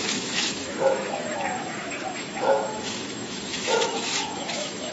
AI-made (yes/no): yes